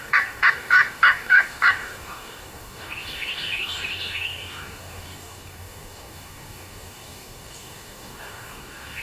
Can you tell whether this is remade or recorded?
remade